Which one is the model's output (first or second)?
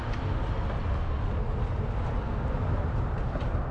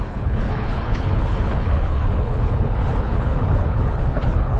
second